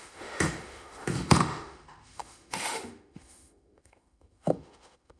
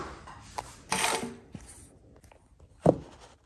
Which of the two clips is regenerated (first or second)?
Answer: first